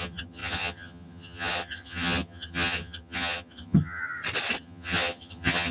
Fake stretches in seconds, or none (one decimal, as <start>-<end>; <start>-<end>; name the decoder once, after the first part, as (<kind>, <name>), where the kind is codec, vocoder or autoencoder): 0.0-4.0 (vocoder, HiFi-GAN); 4.6-5.7